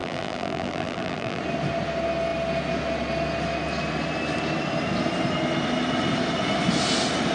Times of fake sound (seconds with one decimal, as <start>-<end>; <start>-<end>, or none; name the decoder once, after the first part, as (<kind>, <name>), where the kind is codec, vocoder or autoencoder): 0.0-1.4 (vocoder, BigVGAN v2)